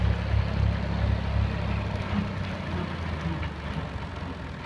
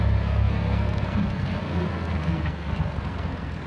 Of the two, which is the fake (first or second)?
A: second